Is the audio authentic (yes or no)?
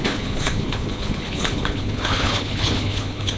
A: no